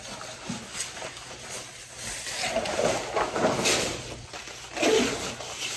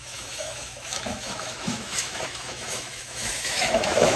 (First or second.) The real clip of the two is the first